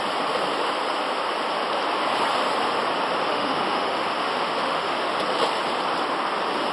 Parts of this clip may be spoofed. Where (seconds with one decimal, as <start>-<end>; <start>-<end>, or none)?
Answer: 3.3-5.2